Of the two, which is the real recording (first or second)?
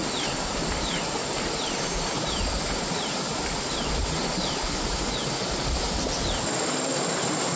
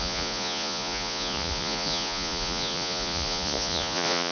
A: first